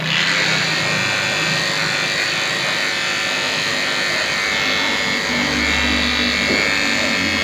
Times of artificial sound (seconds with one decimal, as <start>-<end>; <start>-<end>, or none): none